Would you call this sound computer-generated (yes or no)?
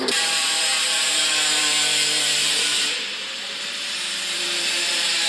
yes